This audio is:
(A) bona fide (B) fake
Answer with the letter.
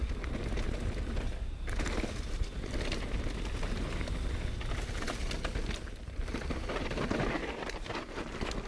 A